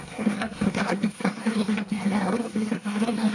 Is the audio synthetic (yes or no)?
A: yes